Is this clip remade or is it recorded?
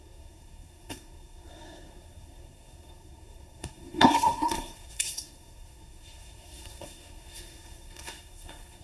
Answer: remade